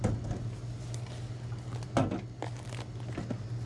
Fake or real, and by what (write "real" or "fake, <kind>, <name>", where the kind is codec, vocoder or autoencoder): real